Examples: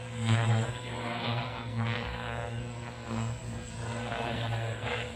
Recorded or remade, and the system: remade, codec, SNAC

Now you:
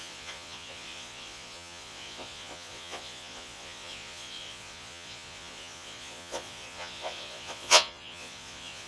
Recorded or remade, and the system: remade, vocoder, Vocos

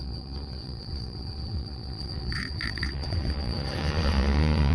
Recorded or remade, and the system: remade, vocoder, WaveNeXt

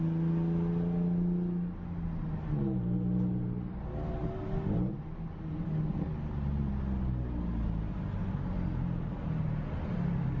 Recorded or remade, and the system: recorded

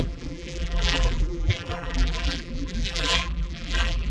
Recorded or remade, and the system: remade, vocoder, BigVGAN v2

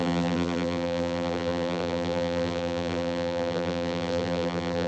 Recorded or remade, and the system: remade, vocoder, BigVGAN v2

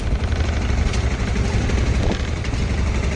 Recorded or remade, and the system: remade, vocoder, BigVGAN v2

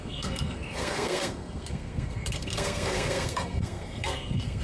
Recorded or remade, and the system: remade, codec, SNAC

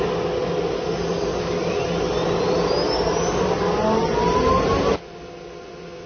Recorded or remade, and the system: recorded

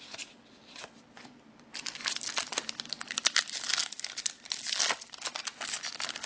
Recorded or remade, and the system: recorded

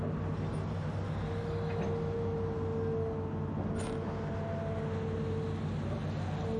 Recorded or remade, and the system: recorded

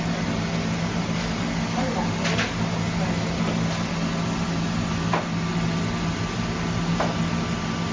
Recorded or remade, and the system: recorded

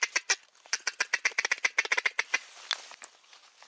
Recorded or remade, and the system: recorded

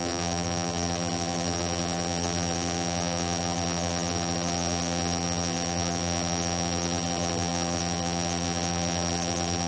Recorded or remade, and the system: remade, vocoder, BigVGAN v2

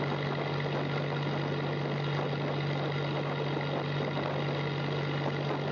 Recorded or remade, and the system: recorded